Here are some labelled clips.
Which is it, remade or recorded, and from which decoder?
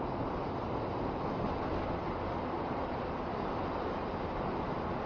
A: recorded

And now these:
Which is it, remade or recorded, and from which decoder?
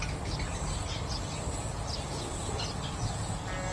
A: recorded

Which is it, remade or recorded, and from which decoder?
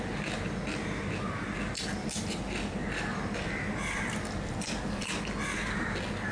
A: recorded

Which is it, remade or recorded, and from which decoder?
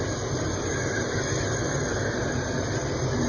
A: recorded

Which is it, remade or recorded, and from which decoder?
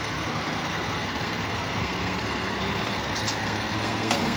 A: remade, codec, SNAC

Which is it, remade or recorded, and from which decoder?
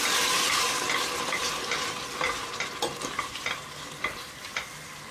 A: recorded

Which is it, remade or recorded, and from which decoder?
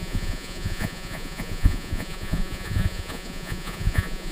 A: remade, vocoder, Vocos